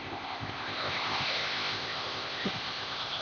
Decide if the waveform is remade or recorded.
remade